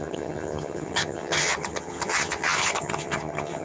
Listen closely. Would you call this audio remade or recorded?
remade